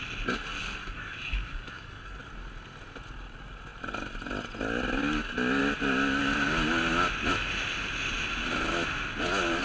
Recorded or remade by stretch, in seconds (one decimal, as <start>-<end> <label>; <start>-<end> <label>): 0.0-0.8 recorded; 0.8-2.2 remade; 2.2-9.6 recorded